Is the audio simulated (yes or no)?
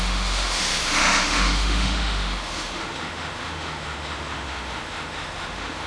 yes